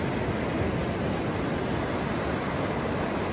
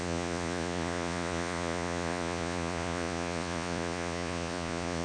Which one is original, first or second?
first